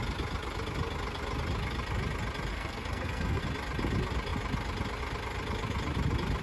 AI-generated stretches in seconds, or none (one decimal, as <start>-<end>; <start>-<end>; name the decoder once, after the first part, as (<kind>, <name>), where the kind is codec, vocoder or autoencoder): 2.5-3.4 (codec, SNAC)